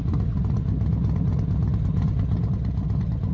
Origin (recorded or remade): remade